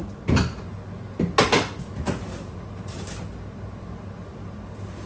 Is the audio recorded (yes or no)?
yes